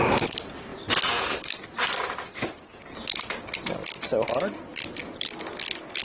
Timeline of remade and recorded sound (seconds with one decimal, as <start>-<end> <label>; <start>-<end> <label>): 0.0-6.0 recorded